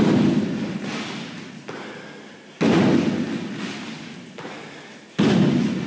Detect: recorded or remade recorded